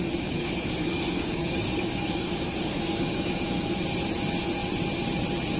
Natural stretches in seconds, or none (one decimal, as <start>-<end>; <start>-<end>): 0.0-0.4; 3.8-5.6